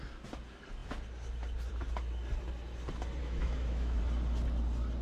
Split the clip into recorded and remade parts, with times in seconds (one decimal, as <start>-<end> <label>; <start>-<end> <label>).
0.0-3.2 recorded; 3.2-4.0 remade; 4.0-5.0 recorded